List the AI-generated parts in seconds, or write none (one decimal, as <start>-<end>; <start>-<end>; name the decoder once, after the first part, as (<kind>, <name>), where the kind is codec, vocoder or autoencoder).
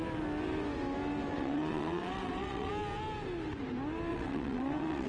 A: 1.3-2.7 (vocoder, WaveNeXt); 4.1-5.1